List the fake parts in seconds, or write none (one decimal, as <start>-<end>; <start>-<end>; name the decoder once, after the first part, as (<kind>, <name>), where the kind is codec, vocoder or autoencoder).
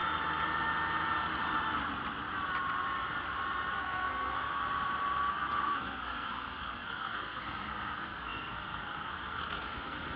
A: 3.7-4.6 (codec, SNAC); 5.3-10.2